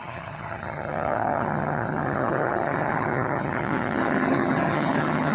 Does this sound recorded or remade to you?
remade